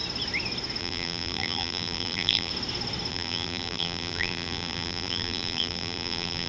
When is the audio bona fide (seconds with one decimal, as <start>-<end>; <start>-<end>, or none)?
0.0-0.8; 2.5-3.1